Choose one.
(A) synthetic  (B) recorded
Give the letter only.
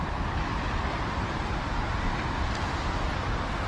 B